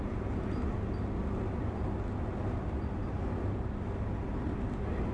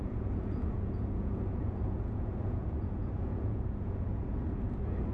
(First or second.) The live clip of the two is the first